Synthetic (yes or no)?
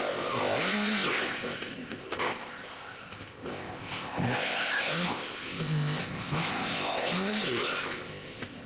yes